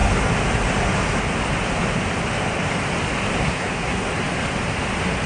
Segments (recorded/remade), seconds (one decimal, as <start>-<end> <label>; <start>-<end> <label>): 0.0-3.4 recorded; 3.4-4.1 remade; 4.1-5.3 recorded